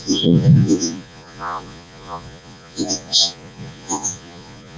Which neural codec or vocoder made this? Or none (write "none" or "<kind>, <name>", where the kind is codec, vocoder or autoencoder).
vocoder, Vocos